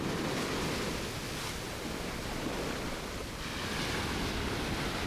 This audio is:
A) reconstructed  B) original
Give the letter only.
B